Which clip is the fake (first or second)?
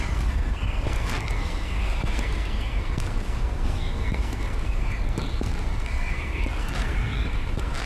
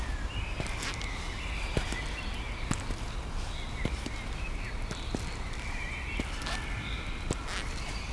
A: first